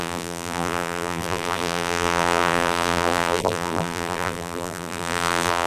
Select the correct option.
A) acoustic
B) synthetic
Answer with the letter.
B